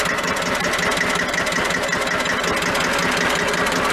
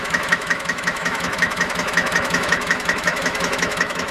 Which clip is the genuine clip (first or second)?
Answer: first